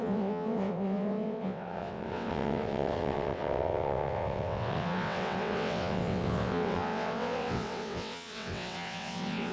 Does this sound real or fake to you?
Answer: fake